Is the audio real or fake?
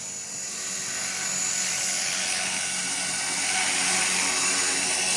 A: real